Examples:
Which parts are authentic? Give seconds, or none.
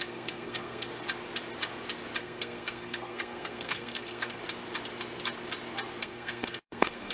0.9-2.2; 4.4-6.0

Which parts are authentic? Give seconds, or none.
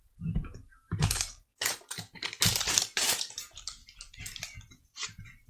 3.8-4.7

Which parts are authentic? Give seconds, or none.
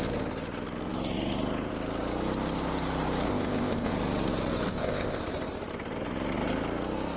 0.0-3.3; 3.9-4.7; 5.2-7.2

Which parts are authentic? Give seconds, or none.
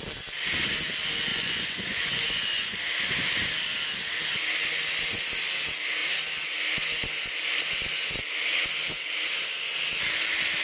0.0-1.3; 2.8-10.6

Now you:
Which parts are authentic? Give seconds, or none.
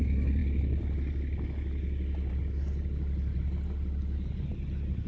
0.0-5.1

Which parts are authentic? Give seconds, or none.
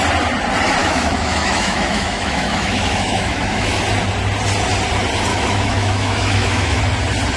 0.0-0.8; 3.8-5.3; 6.8-7.4